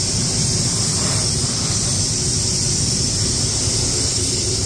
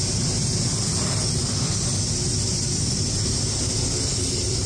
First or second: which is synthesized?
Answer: first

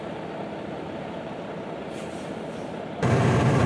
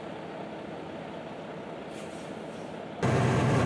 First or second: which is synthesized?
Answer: first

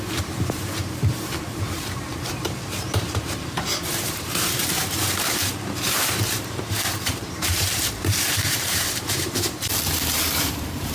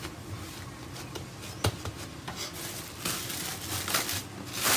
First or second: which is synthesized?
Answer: first